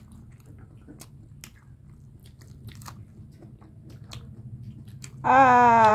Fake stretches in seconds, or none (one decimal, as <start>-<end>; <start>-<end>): none